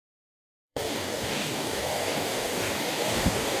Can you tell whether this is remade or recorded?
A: remade